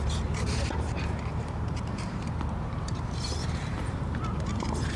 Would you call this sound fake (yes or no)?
yes